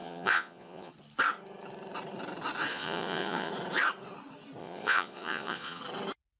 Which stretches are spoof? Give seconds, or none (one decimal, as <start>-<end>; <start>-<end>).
0.0-0.9; 2.7-3.5; 4.6-5.8